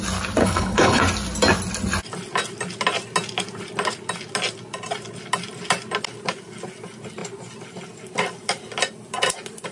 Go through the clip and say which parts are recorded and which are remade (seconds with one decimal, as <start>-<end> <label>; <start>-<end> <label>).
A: 0.0-0.4 recorded; 0.4-1.0 remade; 1.0-9.7 recorded